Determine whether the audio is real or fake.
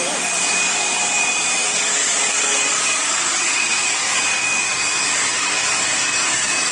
fake